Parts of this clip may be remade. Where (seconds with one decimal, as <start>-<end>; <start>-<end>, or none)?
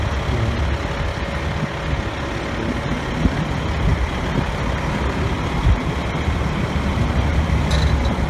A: 3.9-7.7